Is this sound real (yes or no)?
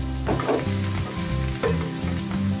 yes